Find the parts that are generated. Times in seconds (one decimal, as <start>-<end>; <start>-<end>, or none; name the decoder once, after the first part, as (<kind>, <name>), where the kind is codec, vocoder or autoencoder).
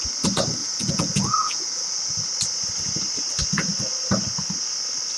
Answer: 0.6-2.1 (vocoder, Vocos)